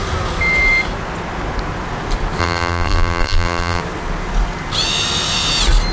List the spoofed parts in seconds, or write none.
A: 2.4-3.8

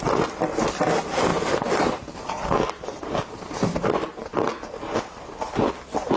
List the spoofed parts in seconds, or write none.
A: none